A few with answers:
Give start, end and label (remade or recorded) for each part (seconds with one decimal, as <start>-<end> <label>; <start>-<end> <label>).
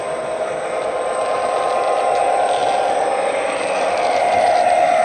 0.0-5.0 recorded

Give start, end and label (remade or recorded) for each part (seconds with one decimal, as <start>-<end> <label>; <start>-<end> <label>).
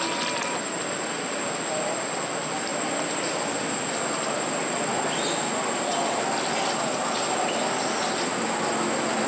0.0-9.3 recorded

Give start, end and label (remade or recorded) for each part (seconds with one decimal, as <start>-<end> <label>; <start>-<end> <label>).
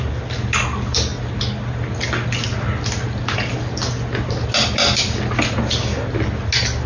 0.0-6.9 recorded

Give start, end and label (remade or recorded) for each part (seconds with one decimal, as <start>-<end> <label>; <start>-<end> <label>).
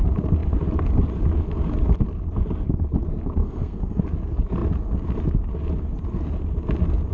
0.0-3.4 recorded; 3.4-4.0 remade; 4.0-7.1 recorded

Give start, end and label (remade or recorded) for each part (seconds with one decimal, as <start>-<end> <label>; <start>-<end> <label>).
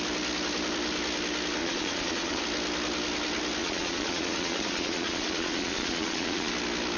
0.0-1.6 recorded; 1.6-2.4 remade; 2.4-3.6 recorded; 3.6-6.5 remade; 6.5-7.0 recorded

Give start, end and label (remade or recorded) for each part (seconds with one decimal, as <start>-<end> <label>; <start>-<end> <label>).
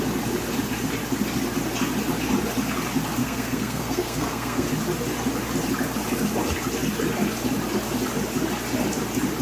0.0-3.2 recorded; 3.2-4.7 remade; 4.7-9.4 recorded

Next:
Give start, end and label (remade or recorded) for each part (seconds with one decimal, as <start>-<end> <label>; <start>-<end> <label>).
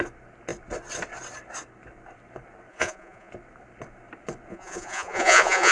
0.0-2.7 recorded; 2.7-3.3 remade; 3.3-4.5 recorded; 4.5-5.7 remade